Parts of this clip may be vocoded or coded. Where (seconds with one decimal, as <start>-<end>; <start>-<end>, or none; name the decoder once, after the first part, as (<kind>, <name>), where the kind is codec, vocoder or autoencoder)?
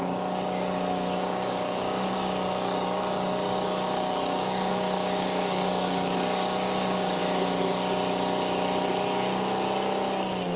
0.0-7.2 (codec, DAC)